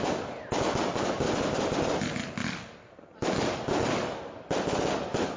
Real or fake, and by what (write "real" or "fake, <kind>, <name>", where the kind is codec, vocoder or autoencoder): real